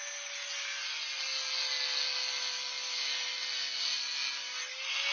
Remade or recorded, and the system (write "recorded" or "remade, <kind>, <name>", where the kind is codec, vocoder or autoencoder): recorded